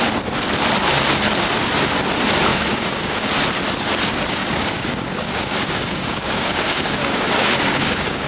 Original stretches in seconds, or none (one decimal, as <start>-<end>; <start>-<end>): 0.0-2.5; 3.3-4.4